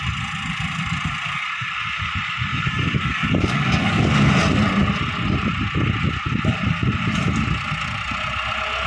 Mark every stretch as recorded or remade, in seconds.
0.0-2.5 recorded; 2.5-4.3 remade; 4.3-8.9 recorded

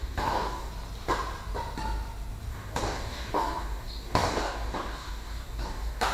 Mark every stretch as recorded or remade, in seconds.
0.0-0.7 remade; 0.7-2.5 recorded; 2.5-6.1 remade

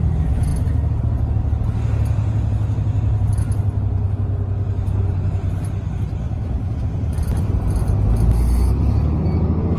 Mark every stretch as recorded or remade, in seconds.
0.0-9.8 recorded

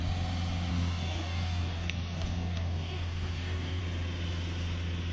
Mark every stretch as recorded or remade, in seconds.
0.0-0.7 recorded; 0.7-3.8 remade; 3.8-5.1 recorded